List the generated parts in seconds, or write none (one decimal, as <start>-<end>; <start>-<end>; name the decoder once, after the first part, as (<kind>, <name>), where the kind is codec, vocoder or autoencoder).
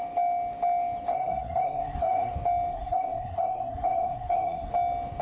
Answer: 1.1-2.3 (codec, SNAC); 2.7-4.7